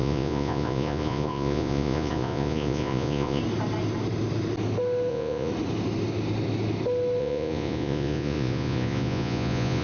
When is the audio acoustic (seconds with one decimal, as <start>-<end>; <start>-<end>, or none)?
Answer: 3.4-5.1; 5.5-7.2